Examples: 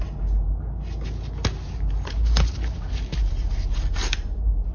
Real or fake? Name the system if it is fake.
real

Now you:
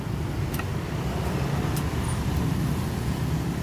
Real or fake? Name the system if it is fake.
real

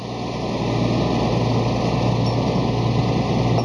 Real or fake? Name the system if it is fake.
real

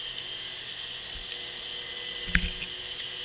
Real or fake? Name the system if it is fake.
real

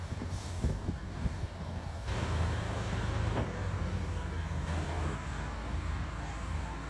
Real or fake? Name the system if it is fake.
fake, codec, DAC